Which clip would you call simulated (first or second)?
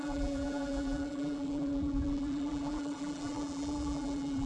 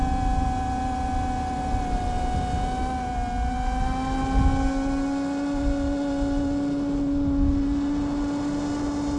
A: first